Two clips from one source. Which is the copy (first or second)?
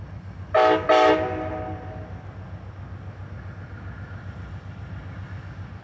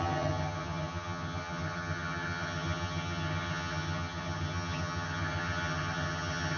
second